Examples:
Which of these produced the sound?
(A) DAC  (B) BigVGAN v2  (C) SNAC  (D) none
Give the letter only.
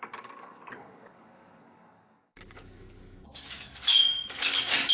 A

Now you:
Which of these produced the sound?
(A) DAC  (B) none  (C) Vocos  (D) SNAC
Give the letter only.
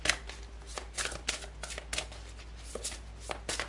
B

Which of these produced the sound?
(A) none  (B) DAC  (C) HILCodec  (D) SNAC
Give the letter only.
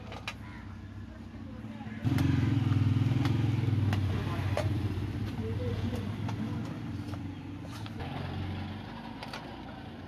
A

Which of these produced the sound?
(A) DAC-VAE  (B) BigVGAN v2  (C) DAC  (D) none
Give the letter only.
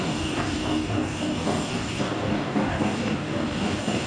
C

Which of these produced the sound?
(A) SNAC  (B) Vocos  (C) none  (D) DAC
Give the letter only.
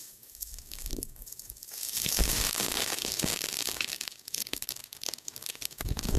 D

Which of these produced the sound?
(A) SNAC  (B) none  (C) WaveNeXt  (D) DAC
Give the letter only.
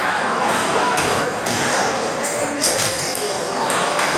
D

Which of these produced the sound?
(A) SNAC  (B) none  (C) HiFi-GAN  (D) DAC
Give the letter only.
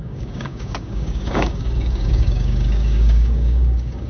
D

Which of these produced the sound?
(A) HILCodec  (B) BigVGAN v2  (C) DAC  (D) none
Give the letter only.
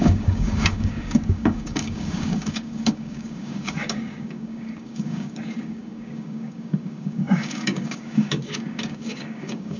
C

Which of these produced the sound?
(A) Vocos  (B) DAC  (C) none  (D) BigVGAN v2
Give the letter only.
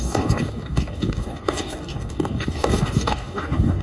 B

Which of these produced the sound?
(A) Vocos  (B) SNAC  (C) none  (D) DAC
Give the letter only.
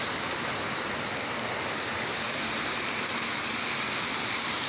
C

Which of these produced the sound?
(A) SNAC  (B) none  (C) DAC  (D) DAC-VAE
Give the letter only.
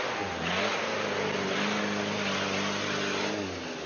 B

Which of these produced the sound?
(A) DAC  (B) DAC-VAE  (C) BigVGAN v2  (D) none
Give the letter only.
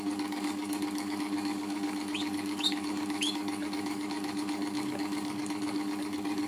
A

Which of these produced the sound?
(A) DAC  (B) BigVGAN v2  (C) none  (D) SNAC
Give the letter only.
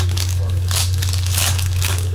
A